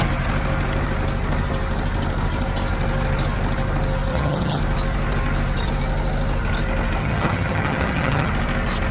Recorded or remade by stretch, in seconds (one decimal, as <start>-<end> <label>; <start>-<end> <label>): 0.0-4.1 recorded; 4.1-4.6 remade; 4.6-7.0 recorded; 7.0-8.3 remade; 8.3-8.9 recorded